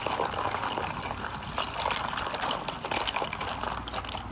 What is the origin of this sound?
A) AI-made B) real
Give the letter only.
B